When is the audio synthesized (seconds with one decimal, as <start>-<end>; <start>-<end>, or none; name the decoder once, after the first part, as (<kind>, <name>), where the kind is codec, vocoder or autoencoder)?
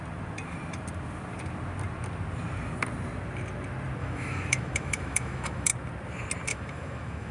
4.0-5.7 (autoencoder, DAC-VAE); 6.5-7.3